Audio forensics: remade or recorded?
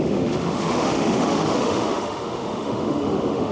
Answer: remade